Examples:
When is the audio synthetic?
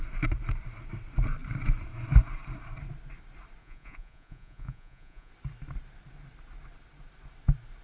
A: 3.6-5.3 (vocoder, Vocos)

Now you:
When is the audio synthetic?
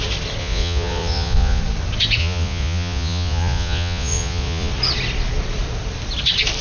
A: 0.4-1.6 (vocoder, Vocos); 2.2-4.7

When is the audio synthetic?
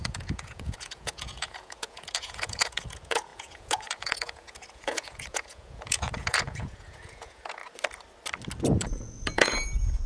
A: 0.0-7.6 (vocoder, Vocos); 8.6-10.1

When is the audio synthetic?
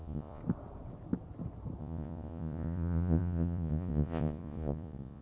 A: 0.0-0.4 (vocoder, Vocos); 1.8-5.2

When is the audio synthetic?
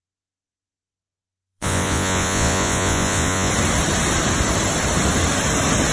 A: 0.0-3.5 (vocoder, Vocos)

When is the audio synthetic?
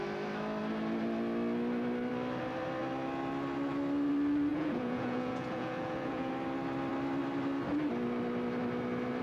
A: 4.5-6.3 (vocoder, Vocos)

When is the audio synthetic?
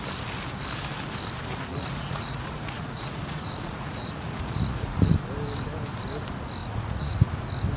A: 1.7-5.1 (vocoder, Vocos); 6.6-7.3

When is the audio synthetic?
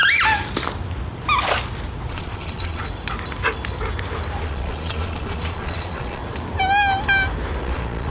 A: 2.1-2.8 (vocoder, Vocos); 4.4-6.2; 7.6-8.1